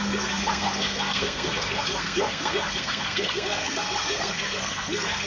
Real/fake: fake